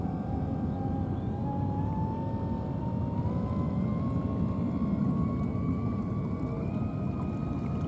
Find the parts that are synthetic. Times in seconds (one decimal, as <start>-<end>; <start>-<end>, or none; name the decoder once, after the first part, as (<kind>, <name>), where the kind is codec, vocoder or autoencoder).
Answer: 5.5-6.5 (vocoder, BigVGAN v2)